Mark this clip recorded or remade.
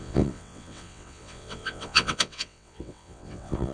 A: remade